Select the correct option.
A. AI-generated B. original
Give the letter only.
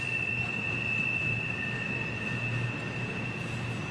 B